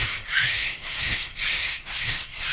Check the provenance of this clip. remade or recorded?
remade